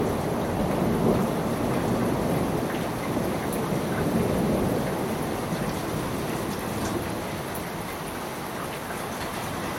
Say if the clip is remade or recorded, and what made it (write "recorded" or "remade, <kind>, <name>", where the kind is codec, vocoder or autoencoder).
recorded